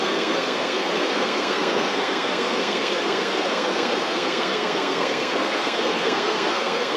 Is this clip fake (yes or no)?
yes